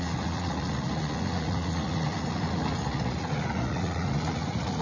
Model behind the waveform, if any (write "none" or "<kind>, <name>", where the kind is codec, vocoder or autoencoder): vocoder, Vocos